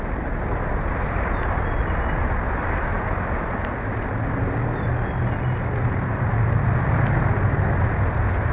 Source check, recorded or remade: recorded